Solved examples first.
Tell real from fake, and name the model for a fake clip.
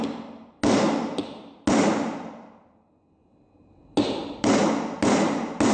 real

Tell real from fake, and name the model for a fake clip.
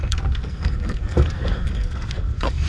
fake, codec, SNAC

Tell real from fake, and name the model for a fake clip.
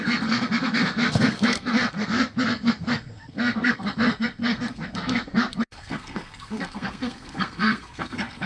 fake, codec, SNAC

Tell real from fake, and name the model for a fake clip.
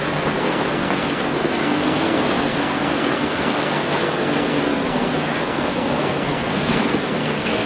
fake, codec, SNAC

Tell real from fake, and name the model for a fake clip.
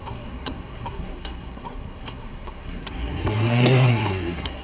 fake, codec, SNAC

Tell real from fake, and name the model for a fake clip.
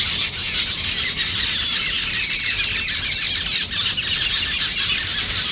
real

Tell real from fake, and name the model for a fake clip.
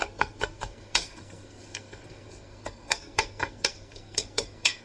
fake, codec, SNAC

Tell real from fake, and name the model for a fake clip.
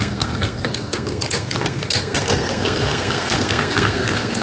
fake, codec, SNAC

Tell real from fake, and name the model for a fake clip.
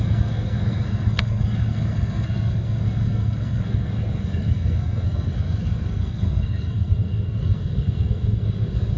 fake, codec, SNAC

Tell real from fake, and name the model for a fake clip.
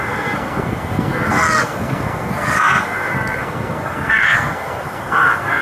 fake, codec, SNAC